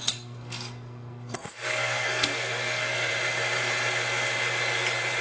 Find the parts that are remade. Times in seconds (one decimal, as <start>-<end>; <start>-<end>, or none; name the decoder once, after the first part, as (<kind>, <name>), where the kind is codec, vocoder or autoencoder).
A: 0.0-3.1 (codec, SNAC)